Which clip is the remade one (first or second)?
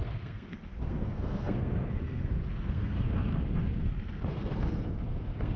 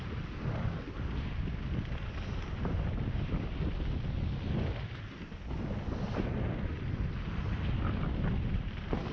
first